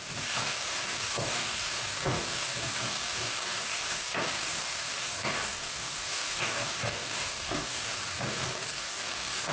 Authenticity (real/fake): fake